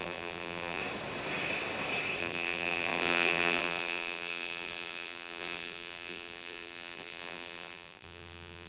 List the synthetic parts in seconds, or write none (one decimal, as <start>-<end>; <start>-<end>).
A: 0.0-0.8; 2.2-8.7